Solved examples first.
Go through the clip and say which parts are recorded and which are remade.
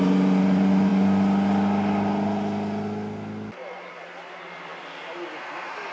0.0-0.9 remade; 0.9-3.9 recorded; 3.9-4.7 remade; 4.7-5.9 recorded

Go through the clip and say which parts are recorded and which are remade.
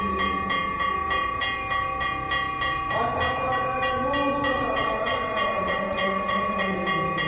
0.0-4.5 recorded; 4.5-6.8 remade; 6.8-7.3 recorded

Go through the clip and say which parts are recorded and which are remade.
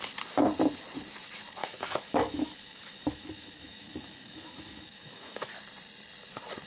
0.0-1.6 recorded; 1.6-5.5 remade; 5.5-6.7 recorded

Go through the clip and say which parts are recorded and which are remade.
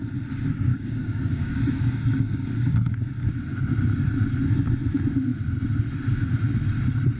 0.0-0.7 recorded; 0.7-2.9 remade; 2.9-7.2 recorded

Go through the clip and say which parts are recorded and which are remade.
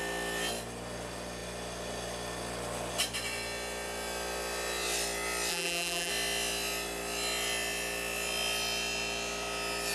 0.0-5.5 recorded; 5.5-6.1 remade; 6.1-9.9 recorded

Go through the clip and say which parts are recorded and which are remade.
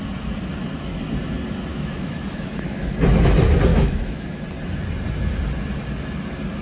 0.0-1.7 recorded; 1.7-2.9 remade; 2.9-3.7 recorded; 3.7-4.4 remade; 4.4-6.6 recorded